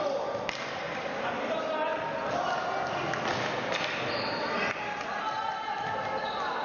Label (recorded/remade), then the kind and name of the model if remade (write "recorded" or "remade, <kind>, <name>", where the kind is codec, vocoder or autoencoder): recorded